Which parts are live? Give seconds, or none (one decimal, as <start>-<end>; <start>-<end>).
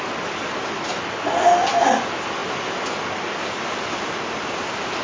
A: 0.0-5.0